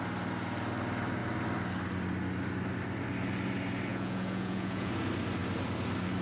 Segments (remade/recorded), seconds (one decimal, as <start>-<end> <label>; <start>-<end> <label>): 0.0-3.9 recorded; 3.9-4.9 remade; 4.9-6.2 recorded